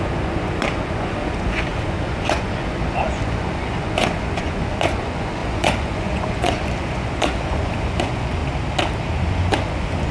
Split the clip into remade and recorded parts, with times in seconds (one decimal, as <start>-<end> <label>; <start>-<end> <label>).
0.0-8.4 remade; 8.4-9.3 recorded; 9.3-10.1 remade